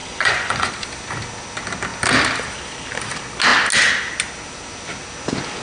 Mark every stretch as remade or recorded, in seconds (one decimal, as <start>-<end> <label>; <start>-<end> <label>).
0.0-0.7 remade; 0.7-5.6 recorded